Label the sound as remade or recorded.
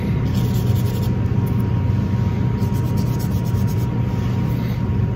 recorded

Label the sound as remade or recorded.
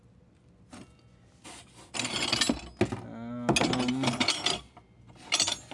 recorded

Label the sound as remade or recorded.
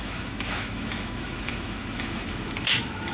remade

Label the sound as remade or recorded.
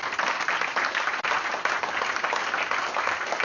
recorded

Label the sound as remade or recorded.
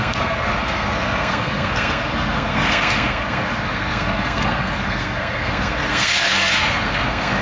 remade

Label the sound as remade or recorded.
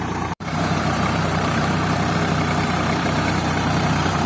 remade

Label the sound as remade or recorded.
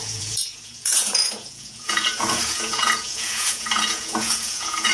remade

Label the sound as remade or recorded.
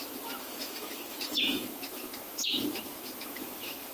remade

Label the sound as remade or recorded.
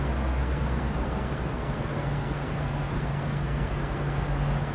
remade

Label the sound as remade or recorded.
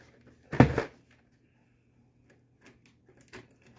recorded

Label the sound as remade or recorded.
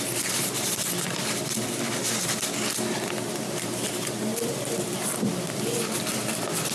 remade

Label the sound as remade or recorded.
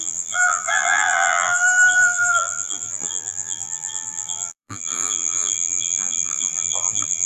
remade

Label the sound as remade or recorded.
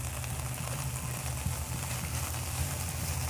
recorded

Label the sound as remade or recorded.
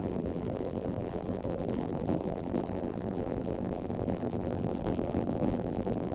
remade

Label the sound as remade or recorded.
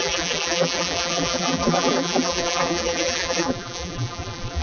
remade